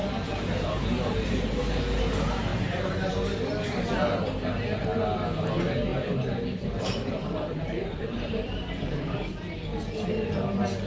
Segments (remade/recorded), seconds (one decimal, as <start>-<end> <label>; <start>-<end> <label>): 0.0-1.6 remade; 1.6-2.5 recorded; 2.5-3.1 remade; 3.1-5.9 recorded; 5.9-9.8 remade; 9.8-10.9 recorded